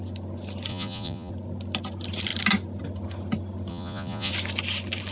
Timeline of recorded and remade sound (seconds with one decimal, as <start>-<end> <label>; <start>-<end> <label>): 0.0-0.7 recorded; 0.7-1.3 remade; 1.3-3.7 recorded; 3.7-4.3 remade; 4.3-5.1 recorded